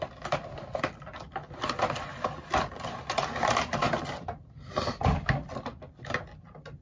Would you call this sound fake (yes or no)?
no